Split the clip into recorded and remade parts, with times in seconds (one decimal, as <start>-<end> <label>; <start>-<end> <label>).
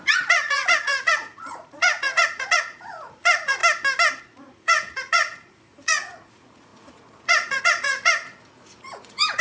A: 0.0-3.6 remade; 3.6-4.2 recorded; 4.2-9.4 remade